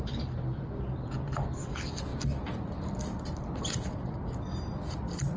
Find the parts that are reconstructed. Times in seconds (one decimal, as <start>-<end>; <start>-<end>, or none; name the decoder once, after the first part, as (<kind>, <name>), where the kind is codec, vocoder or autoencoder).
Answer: none